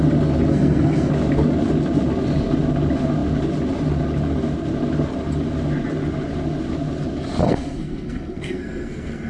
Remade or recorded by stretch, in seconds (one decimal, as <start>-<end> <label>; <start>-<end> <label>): 0.0-0.5 recorded; 0.5-1.1 remade; 1.1-7.4 recorded; 7.4-9.3 remade